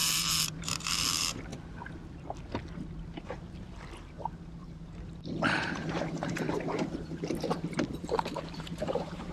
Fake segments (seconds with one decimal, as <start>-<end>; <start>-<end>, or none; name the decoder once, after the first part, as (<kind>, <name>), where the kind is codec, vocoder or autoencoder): 0.0-1.5 (vocoder, BigVGAN v2); 3.0-9.3